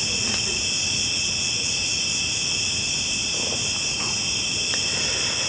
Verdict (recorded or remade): recorded